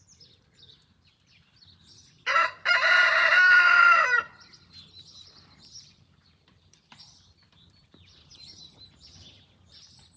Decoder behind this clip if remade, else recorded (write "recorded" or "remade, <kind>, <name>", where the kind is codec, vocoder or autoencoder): remade, vocoder, BigVGAN v2